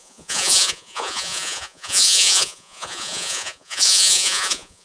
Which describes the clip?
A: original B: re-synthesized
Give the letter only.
B